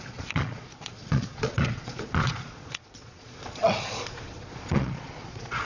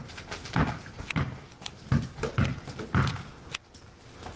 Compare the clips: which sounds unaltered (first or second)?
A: second